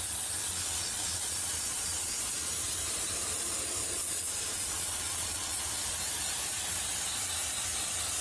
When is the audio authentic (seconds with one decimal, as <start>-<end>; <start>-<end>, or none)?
0.0-0.4; 2.5-4.0; 5.6-8.2